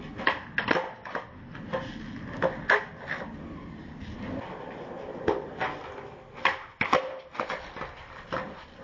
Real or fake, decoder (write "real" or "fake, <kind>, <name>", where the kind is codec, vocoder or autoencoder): real